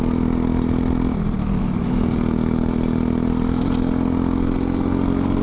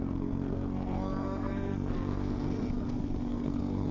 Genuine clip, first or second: first